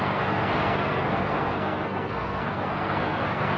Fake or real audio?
fake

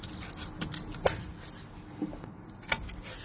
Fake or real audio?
real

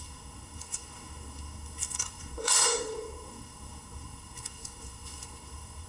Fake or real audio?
fake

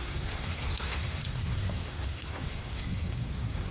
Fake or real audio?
fake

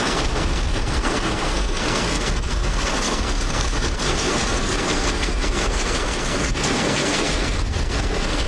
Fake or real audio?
fake